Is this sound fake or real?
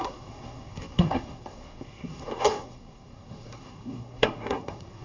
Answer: fake